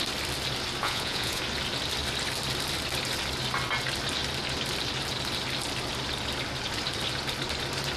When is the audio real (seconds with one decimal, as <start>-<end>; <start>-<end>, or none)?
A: 0.0-0.8; 1.4-8.0